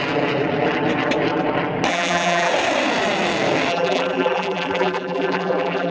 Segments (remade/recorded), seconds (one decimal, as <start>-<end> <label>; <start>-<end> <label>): 0.0-1.9 recorded; 1.9-2.5 remade; 2.5-3.7 recorded; 3.7-5.9 remade